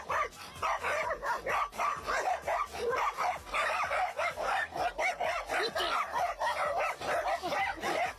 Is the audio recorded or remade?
recorded